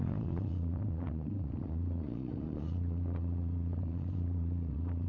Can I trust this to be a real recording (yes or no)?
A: no